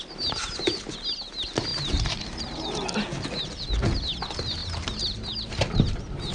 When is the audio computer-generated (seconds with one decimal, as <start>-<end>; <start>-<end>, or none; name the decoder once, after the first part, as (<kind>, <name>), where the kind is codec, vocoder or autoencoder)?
1.7-2.9 (vocoder, BigVGAN v2); 4.6-6.3